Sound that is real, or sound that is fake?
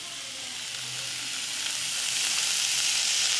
real